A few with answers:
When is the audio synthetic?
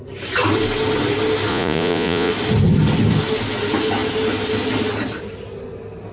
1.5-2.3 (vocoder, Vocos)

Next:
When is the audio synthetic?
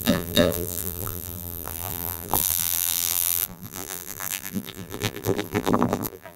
0.0-6.4 (vocoder, BigVGAN v2)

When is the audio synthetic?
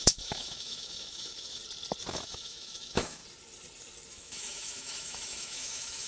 0.0-1.6 (autoencoder, DAC-VAE); 2.1-3.2; 4.1-6.1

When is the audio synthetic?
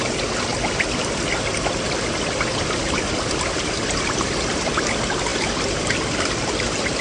none